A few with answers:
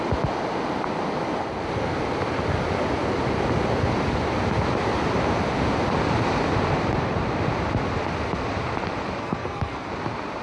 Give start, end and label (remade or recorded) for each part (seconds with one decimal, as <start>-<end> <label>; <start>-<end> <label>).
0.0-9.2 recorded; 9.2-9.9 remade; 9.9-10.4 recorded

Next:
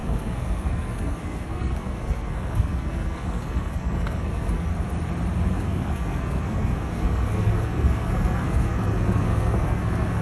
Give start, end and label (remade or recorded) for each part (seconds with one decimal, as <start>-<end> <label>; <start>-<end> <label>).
0.0-4.7 remade; 4.7-5.5 recorded; 5.5-10.2 remade

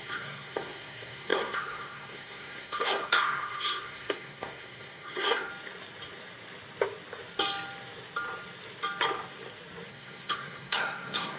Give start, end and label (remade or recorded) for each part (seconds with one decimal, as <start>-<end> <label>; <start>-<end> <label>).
0.0-5.5 remade; 5.5-9.9 recorded; 9.9-11.4 remade

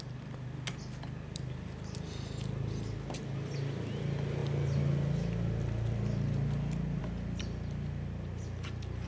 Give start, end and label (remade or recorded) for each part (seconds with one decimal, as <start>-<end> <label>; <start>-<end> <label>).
0.0-9.1 recorded

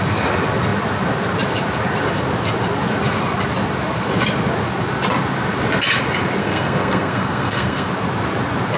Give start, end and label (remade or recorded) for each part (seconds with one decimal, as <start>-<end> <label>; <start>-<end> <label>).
0.0-6.4 recorded; 6.4-7.9 remade; 7.9-8.8 recorded